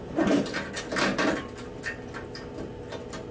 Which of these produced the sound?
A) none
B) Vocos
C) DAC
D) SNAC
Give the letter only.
A